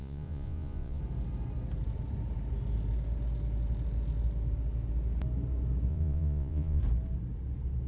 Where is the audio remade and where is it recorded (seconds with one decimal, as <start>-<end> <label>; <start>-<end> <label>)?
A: 0.0-1.0 remade; 1.0-5.9 recorded; 5.9-6.8 remade; 6.8-7.9 recorded